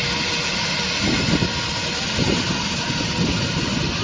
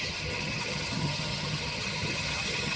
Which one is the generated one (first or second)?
second